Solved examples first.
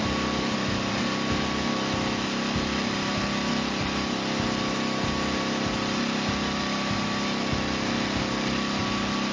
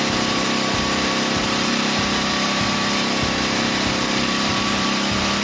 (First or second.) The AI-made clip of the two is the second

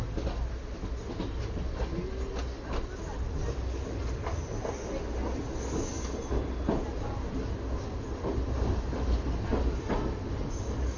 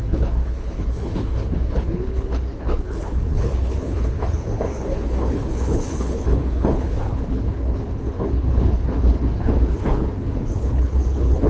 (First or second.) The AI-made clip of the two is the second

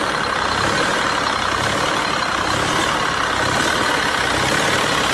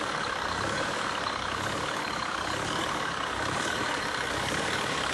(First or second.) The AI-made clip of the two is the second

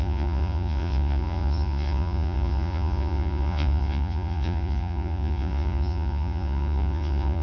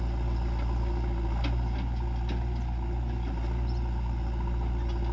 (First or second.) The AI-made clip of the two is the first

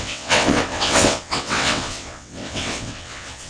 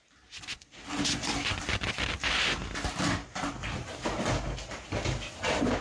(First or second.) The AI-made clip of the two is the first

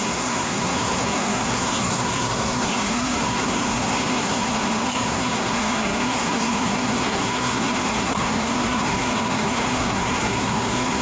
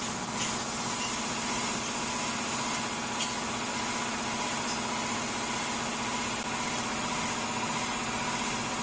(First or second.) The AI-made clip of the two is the first